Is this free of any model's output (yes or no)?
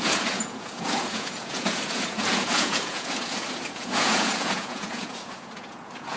no